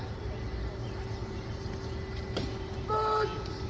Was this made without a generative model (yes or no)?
yes